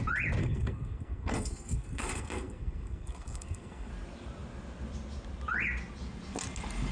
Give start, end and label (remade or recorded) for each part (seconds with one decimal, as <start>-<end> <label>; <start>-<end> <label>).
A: 0.0-0.4 recorded; 0.4-3.9 remade; 3.9-6.9 recorded